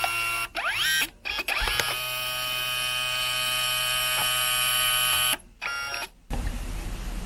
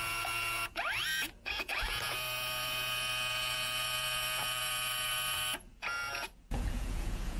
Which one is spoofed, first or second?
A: second